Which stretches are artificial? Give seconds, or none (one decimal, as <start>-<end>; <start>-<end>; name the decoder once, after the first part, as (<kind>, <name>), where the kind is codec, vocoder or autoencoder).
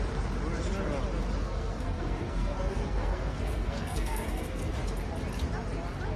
1.4-4.7 (codec, SNAC)